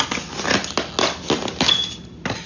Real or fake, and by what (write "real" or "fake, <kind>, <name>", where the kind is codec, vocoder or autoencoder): real